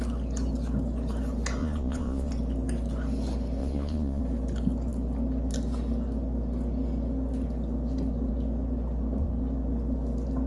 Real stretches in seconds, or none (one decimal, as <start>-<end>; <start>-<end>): 0.0-1.6; 2.3-3.6; 4.2-10.5